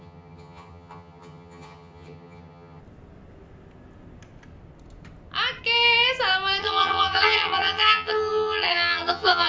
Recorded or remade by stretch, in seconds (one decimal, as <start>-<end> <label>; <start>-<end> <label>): 0.0-2.8 remade; 2.8-6.6 recorded; 6.6-9.5 remade